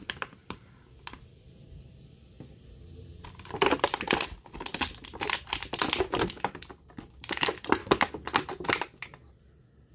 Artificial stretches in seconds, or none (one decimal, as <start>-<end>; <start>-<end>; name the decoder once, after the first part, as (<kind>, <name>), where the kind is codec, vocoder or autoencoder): 0.4-5.5 (vocoder, BigVGAN v2); 7.8-8.5